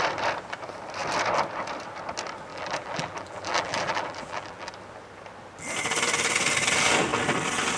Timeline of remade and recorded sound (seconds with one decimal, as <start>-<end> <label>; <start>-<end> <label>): 0.0-2.5 recorded; 2.5-4.7 remade; 4.7-7.8 recorded